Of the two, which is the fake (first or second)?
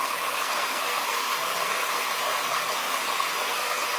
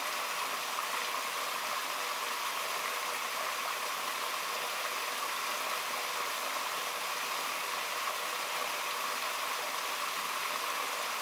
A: first